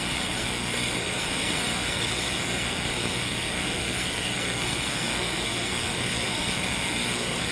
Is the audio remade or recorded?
remade